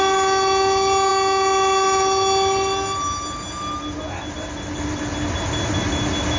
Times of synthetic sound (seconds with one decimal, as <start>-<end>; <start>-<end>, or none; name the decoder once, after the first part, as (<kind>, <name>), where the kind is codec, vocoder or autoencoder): none